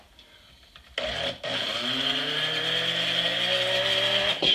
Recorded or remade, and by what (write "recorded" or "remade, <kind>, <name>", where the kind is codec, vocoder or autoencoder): recorded